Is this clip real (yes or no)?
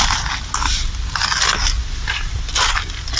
yes